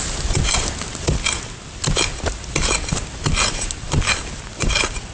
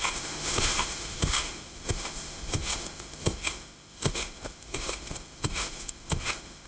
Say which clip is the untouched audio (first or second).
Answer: first